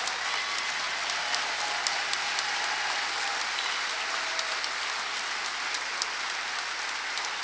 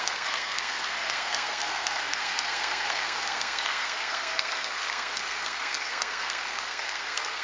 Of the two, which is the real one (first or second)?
first